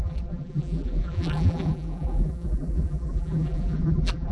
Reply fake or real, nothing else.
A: fake